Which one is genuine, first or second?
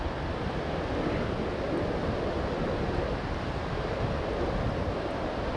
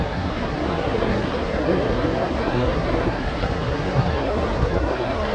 first